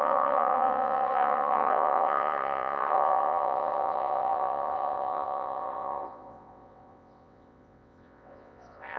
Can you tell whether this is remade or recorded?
remade